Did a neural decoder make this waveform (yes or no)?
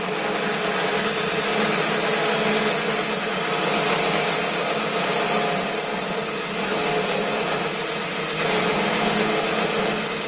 no